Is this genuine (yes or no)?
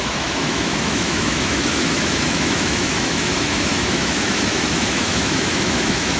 no